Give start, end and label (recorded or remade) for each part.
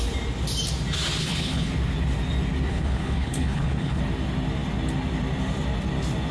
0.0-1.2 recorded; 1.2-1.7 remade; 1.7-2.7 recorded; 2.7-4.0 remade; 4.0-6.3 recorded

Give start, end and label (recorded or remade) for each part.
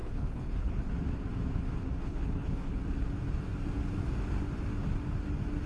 0.0-0.9 remade; 0.9-2.0 recorded; 2.0-2.8 remade; 2.8-5.7 recorded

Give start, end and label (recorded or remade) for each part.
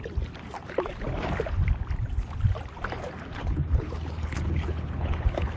0.0-3.4 recorded; 3.4-5.6 remade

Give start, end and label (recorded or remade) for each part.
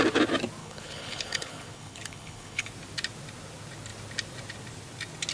0.0-0.6 recorded; 0.6-2.7 remade; 2.7-5.3 recorded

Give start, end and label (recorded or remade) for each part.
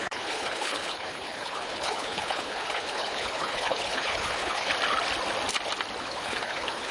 0.0-4.7 remade; 4.7-6.0 recorded; 6.0-6.9 remade